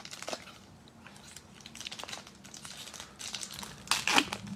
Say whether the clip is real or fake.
real